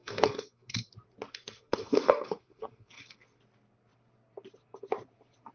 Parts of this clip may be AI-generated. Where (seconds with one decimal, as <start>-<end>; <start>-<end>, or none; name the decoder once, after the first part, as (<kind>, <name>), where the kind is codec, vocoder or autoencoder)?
0.0-0.9 (codec, SNAC); 1.3-3.4